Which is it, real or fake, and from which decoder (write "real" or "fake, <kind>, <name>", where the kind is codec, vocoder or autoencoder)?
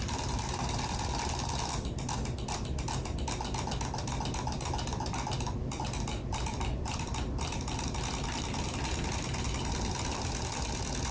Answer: real